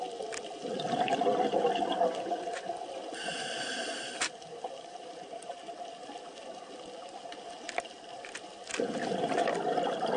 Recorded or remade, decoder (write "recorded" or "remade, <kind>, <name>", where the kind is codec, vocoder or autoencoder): recorded